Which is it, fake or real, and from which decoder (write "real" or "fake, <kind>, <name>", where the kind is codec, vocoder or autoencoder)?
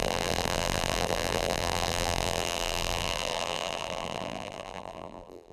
fake, vocoder, BigVGAN v2